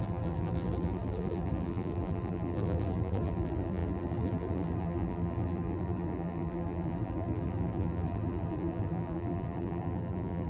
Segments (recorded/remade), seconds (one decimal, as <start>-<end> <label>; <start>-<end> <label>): 0.0-10.5 remade